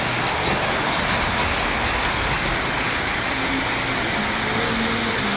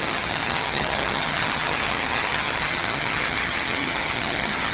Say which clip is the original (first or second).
first